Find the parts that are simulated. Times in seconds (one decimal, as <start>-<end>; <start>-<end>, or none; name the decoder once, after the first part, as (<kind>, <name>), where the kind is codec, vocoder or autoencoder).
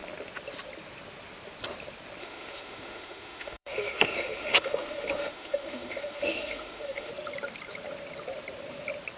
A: 2.2-7.1 (autoencoder, DAC-VAE)